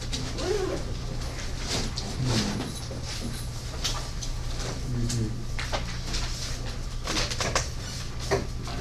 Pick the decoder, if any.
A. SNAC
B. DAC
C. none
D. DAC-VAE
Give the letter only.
C